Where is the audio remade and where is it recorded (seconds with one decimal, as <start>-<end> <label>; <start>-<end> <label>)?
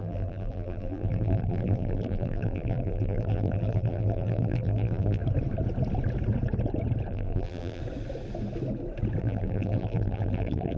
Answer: 0.0-5.2 remade; 5.2-7.1 recorded; 7.1-7.8 remade; 7.8-9.2 recorded; 9.2-10.8 remade